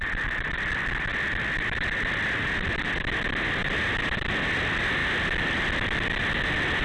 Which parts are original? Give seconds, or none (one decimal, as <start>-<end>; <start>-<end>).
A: 0.0-6.8